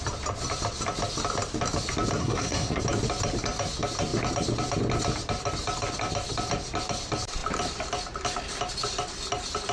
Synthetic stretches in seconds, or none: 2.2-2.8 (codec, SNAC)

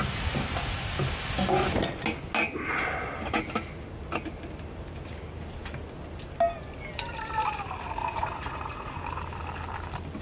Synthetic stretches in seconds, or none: 8.0-9.0 (vocoder, Vocos)

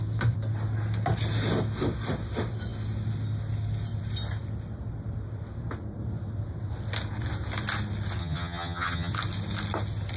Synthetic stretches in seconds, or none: 8.2-9.1 (vocoder, HiFi-GAN)

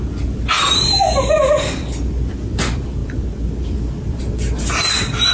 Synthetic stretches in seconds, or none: none

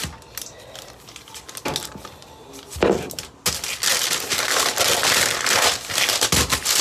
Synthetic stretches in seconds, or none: 3.9-5.0 (vocoder, BigVGAN v2)